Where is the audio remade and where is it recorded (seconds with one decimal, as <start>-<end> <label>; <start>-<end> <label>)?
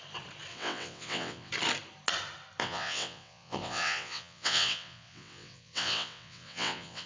0.0-0.5 recorded; 0.5-1.5 remade; 1.5-2.6 recorded; 2.6-7.1 remade